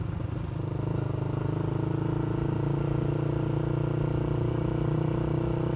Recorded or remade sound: recorded